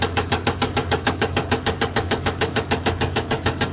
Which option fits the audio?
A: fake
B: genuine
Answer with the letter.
A